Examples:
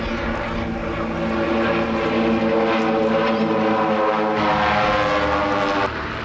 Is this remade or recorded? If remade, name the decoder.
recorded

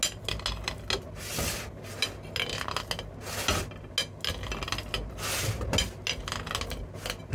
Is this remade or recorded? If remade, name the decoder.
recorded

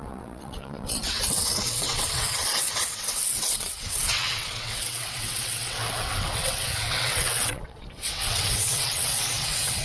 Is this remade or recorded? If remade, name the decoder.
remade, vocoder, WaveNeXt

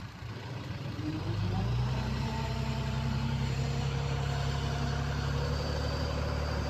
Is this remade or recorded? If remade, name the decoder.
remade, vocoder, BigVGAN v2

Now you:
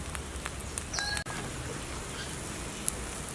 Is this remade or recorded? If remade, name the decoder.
recorded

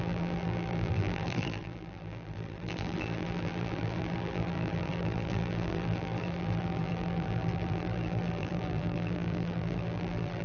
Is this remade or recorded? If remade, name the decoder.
remade, vocoder, BigVGAN v2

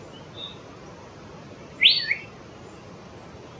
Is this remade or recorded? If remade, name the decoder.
recorded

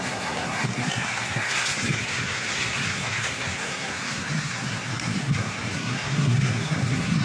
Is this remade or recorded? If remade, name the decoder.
remade, codec, SNAC